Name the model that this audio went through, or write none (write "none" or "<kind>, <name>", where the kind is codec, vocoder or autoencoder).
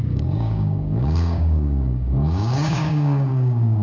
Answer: codec, DAC